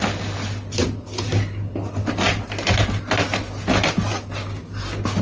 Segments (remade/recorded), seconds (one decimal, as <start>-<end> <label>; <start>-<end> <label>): 0.0-5.2 recorded